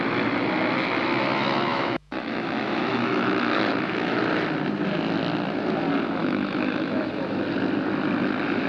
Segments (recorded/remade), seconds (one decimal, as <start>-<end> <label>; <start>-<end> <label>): 0.0-1.7 recorded; 1.7-4.2 remade; 4.2-6.2 recorded; 6.2-7.4 remade; 7.4-8.7 recorded